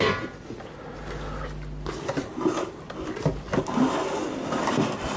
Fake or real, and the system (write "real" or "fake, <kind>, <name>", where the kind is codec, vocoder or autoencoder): real